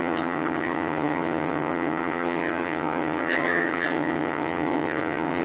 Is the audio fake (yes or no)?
yes